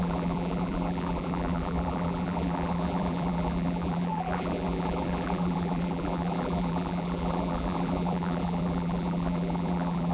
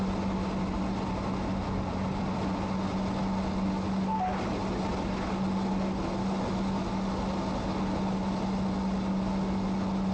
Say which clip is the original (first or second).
second